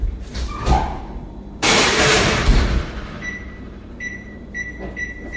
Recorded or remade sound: remade